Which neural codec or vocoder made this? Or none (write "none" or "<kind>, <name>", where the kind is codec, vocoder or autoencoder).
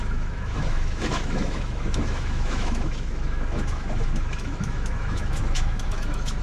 autoencoder, DAC-VAE